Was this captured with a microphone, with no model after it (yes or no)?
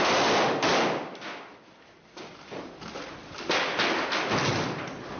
yes